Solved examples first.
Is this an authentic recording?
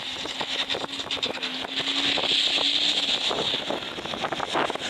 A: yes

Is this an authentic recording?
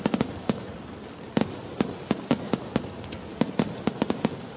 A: yes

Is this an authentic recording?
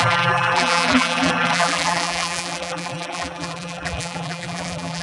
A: no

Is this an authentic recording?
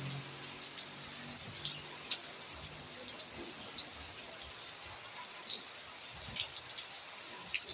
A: yes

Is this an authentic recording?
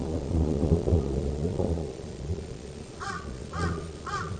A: no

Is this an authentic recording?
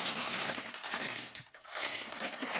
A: no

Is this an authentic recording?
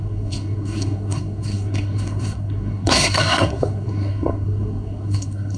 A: no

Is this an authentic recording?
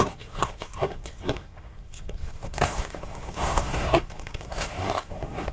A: no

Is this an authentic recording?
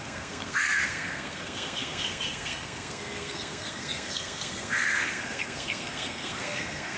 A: no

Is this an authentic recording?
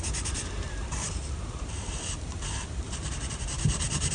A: no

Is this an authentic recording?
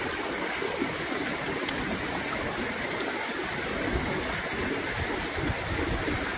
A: yes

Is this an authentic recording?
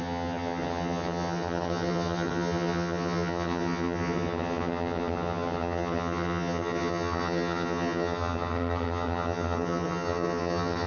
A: no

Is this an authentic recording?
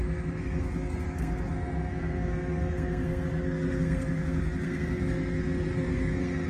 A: no